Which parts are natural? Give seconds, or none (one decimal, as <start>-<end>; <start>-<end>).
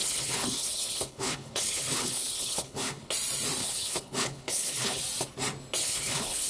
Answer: 3.1-3.6; 5.0-5.8